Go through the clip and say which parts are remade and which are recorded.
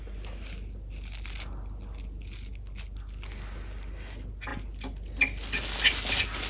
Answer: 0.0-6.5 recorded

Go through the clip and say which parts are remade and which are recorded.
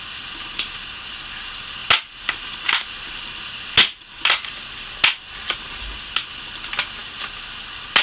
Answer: 0.0-8.0 recorded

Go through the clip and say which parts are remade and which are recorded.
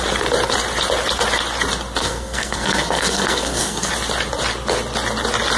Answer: 0.0-2.0 recorded; 2.0-3.9 remade; 3.9-5.6 recorded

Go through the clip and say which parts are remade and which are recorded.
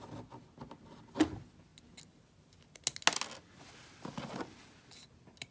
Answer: 0.0-5.5 recorded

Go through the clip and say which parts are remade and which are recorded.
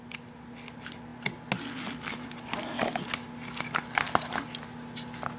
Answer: 0.0-5.4 recorded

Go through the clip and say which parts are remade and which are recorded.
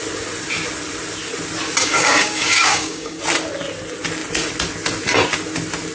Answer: 0.0-1.8 recorded; 1.8-3.2 remade; 3.2-5.9 recorded